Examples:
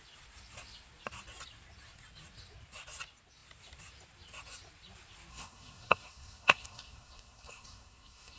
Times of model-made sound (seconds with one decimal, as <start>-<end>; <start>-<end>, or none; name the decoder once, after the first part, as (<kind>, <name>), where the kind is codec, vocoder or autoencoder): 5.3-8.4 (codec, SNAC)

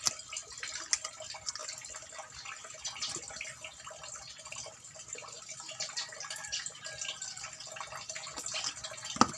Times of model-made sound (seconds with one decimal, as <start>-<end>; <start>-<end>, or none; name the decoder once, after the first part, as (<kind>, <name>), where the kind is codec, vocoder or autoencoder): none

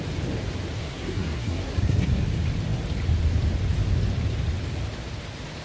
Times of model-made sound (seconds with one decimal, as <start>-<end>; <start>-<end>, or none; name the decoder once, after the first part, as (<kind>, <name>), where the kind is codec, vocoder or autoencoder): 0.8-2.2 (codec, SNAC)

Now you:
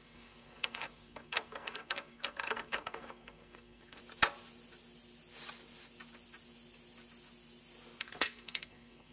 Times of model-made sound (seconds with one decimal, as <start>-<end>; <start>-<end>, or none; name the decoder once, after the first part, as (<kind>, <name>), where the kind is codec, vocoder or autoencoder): 0.0-4.0 (codec, SNAC); 8.0-9.1